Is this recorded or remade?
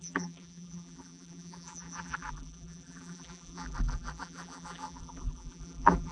remade